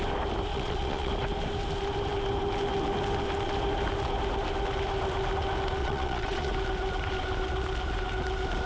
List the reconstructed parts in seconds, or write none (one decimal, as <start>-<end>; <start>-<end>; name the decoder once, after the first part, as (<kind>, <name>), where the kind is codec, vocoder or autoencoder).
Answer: 0.5-1.1 (vocoder, Vocos); 5.8-6.5